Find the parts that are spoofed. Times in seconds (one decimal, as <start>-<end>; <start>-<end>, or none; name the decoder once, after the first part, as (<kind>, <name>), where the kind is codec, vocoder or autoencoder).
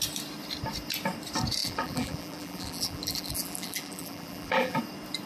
1.6-4.8 (vocoder, BigVGAN v2)